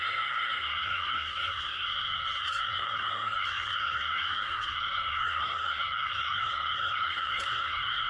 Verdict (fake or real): fake